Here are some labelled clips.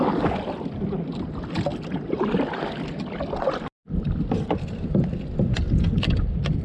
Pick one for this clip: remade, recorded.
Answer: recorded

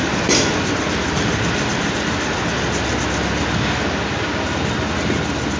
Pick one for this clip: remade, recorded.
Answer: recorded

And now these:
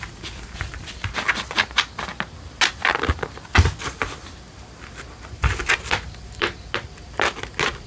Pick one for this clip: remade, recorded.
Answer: recorded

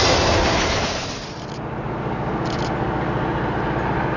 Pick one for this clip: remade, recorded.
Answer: recorded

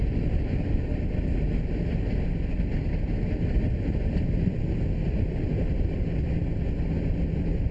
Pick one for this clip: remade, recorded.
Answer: recorded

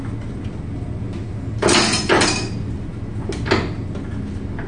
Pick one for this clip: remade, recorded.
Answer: recorded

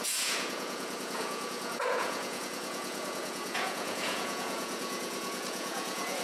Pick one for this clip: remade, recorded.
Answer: remade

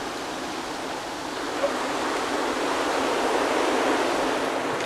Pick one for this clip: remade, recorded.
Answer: recorded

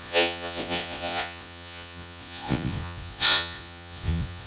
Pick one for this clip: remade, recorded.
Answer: remade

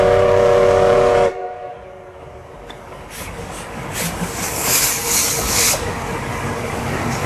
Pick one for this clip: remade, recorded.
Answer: remade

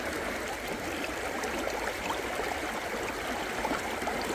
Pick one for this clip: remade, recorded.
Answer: remade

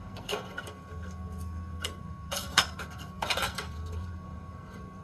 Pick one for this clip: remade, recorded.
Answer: remade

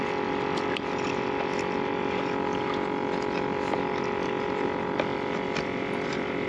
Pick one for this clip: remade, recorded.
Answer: recorded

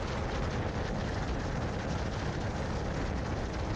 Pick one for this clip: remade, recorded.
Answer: recorded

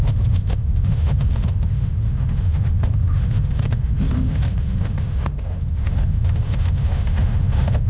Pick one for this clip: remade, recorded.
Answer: remade